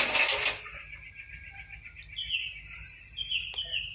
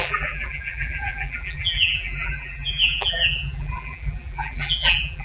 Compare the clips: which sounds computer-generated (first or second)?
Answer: second